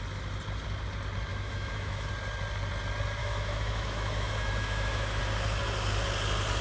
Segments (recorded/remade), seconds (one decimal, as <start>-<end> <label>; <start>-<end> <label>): 0.0-1.3 recorded; 1.3-2.1 remade; 2.1-3.2 recorded; 3.2-5.2 remade; 5.2-6.6 recorded